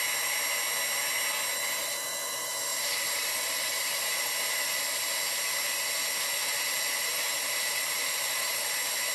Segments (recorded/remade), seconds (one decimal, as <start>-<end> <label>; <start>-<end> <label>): 0.0-2.7 recorded; 2.7-4.3 remade; 4.3-6.4 recorded; 6.4-8.7 remade; 8.7-9.1 recorded

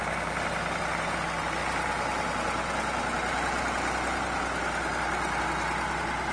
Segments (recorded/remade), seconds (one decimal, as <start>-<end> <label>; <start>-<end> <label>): 0.0-6.3 recorded

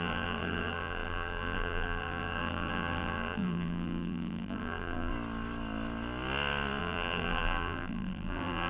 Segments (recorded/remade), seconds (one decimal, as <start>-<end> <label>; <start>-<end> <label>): 0.0-5.1 remade; 5.1-6.8 recorded; 6.8-8.7 remade

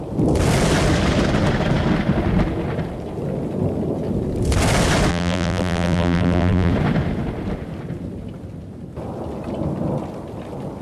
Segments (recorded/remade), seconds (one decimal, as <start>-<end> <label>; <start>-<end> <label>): 0.0-5.1 recorded; 5.1-6.7 remade; 6.7-10.8 recorded

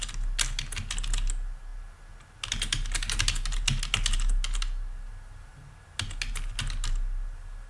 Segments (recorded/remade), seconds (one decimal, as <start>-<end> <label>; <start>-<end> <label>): 0.0-7.7 recorded

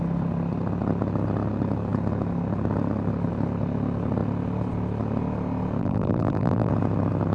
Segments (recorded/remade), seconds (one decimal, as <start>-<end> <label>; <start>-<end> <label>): 0.0-5.8 recorded; 5.8-6.7 remade; 6.7-7.3 recorded